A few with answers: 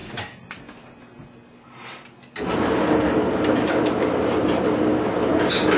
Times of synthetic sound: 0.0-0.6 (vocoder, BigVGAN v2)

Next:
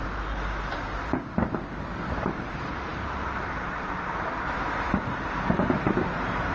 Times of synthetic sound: 0.6-6.5 (vocoder, BigVGAN v2)

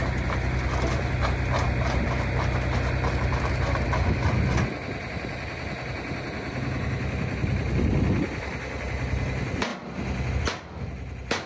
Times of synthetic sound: none